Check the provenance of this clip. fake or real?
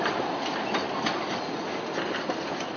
real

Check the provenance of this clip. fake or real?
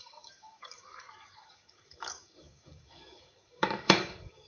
fake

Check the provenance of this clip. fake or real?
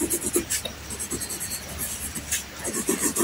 real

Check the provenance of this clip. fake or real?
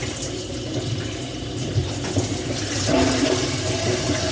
real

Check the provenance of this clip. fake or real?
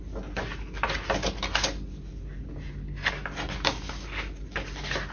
real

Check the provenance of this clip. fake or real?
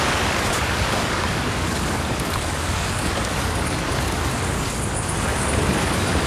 fake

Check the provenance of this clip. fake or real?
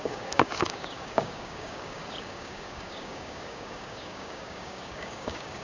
fake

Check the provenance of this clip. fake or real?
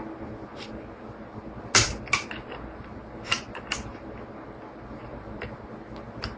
real